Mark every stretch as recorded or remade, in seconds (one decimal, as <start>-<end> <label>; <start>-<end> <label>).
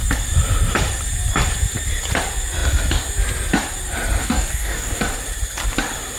0.0-4.2 recorded; 4.2-5.0 remade; 5.0-6.2 recorded